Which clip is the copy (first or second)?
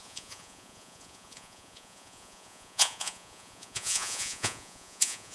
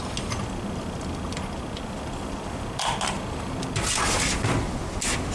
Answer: first